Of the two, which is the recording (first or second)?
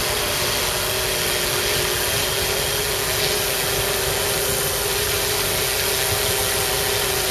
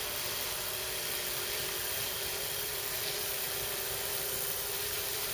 first